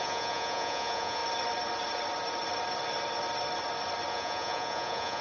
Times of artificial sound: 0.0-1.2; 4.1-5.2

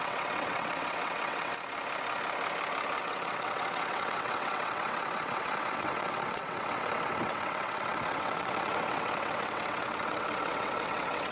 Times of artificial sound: 0.0-1.5; 3.0-11.3

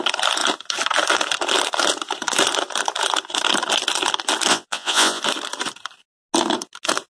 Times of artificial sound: 4.5-5.2

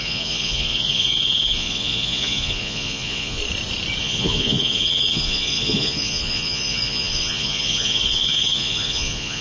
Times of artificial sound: 0.0-3.4; 4.0-9.4

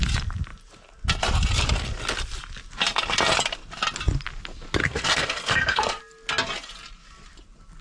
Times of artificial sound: 4.8-6.0

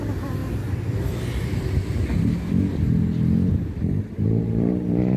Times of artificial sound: 0.0-0.4; 3.5-5.2

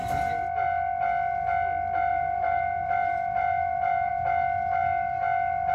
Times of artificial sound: 2.1-4.1